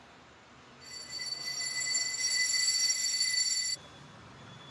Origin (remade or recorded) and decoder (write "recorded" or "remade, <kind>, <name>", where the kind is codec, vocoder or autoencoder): remade, vocoder, BigVGAN v2